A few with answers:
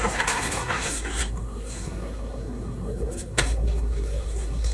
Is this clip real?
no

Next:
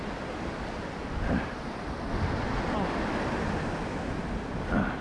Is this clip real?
yes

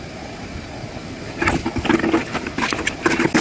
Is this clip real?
yes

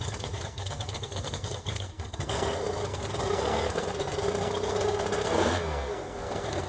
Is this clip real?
no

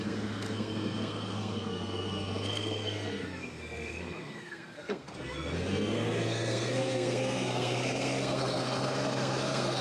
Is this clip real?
no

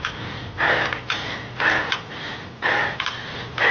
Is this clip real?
yes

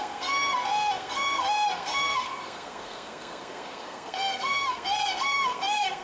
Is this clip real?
no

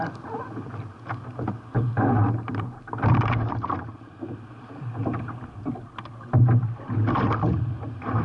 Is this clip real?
yes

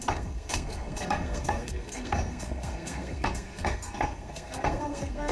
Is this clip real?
no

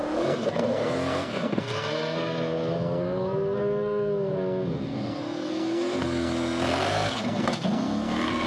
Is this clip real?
no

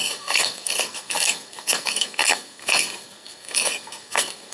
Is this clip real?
no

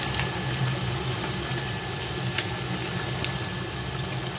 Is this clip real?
yes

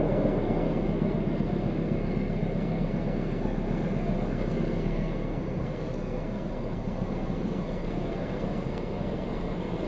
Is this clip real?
no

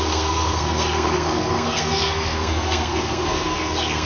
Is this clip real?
no